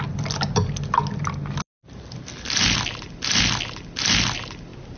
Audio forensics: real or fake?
real